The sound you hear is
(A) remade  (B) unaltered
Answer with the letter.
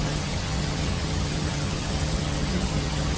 A